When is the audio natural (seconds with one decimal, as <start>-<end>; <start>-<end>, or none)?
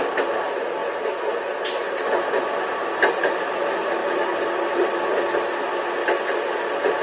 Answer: 0.0-7.0